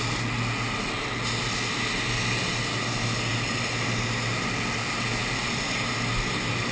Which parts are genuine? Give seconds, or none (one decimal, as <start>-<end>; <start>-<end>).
0.0-6.7